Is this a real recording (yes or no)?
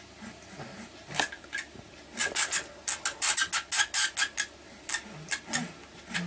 yes